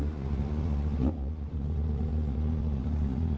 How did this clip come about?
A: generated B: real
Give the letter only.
A